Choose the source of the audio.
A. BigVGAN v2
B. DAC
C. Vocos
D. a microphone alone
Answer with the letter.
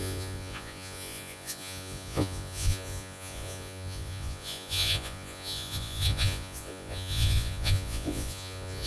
C